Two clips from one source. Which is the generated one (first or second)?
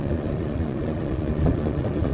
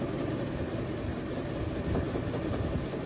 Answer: first